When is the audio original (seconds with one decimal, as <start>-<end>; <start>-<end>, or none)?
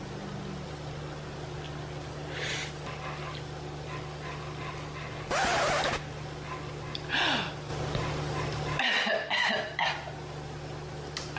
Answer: 0.0-11.4